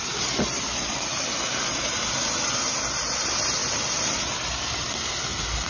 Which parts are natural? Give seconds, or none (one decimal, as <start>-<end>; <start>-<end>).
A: 0.0-5.7